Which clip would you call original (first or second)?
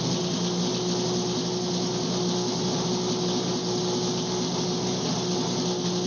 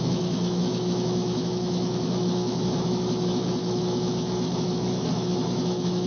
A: first